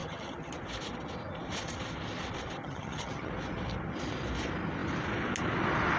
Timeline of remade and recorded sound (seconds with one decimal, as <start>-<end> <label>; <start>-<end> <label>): 0.0-0.5 remade; 0.5-2.6 recorded; 2.6-3.3 remade; 3.3-6.0 recorded